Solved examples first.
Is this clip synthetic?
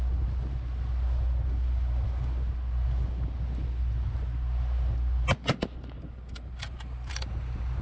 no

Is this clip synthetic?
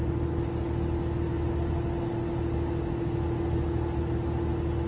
no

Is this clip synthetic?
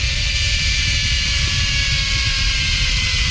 no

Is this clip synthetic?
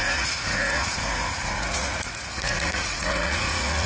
yes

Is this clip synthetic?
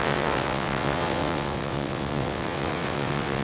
yes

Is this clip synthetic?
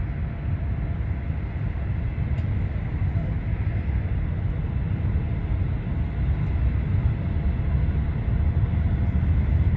no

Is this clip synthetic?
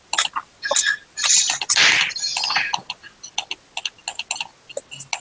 no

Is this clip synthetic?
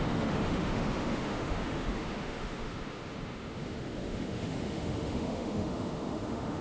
yes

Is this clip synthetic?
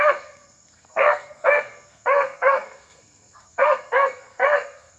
yes